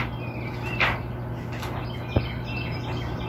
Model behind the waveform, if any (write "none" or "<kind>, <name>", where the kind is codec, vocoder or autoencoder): none